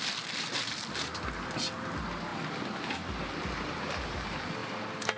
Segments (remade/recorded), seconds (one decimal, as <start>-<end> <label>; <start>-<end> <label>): 0.0-5.2 recorded